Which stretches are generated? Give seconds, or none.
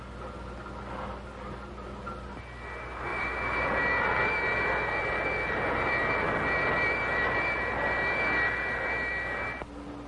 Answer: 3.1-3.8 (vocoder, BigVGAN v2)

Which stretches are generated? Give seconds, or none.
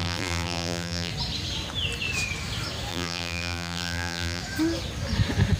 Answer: 0.0-1.1 (vocoder, BigVGAN v2); 2.9-4.4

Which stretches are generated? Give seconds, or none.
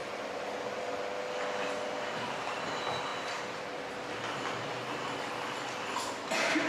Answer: none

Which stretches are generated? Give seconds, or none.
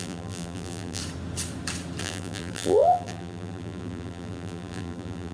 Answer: 0.0-1.0 (vocoder, BigVGAN v2); 2.0-5.3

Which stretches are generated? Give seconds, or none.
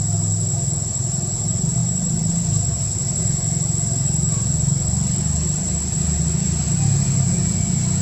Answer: 1.8-2.3 (vocoder, BigVGAN v2)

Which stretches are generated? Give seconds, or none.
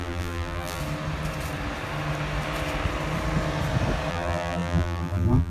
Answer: 0.0-0.8 (vocoder, BigVGAN v2); 4.1-5.5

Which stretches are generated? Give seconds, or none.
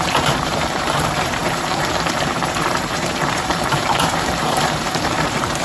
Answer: 0.0-5.6 (vocoder, BigVGAN v2)